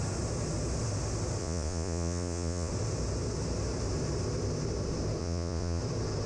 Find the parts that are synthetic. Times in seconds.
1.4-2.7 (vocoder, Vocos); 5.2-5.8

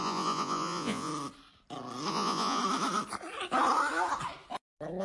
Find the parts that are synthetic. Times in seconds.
0.0-1.1 (vocoder, Vocos); 2.1-2.6

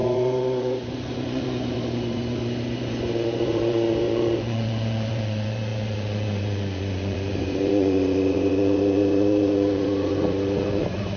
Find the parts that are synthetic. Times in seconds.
0.0-11.2 (vocoder, Vocos)

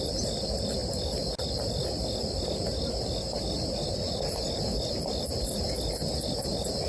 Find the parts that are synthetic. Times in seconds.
none

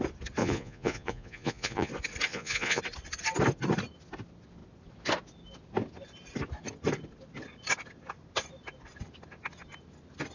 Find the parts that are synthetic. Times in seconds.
0.4-1.9 (vocoder, Vocos); 2.3-2.8

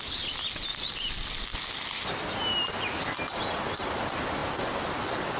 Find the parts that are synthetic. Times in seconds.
none

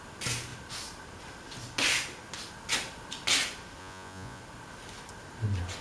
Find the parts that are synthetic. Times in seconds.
3.8-4.4 (vocoder, Vocos)